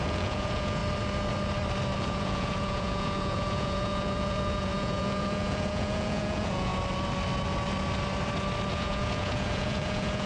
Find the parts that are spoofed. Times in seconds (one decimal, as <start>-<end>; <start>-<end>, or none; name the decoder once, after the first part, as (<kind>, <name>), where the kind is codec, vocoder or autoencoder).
0.0-0.8 (vocoder, Vocos); 2.0-6.7; 8.7-10.3